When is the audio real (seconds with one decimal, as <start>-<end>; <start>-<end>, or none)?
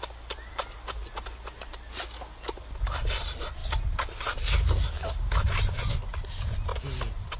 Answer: 0.0-7.4